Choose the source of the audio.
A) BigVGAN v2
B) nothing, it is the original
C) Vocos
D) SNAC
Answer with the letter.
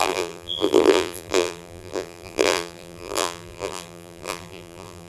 A